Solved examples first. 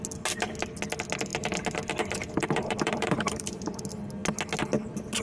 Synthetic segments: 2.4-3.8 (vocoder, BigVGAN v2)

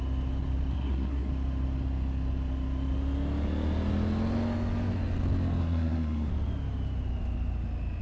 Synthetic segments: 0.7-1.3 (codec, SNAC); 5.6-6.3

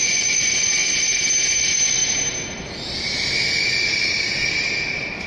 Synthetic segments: 0.0-0.8 (vocoder, Vocos); 1.5-2.0

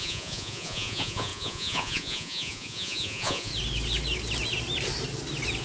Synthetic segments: 0.0-3.5 (vocoder, Vocos)

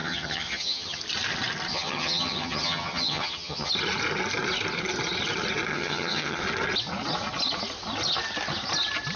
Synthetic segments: 0.0-1.0 (vocoder, HiFi-GAN); 1.7-3.7; 5.7-6.4